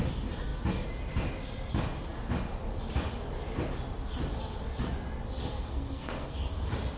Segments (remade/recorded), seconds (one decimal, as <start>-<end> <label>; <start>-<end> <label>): 0.0-5.5 recorded; 5.5-6.5 remade; 6.5-7.0 recorded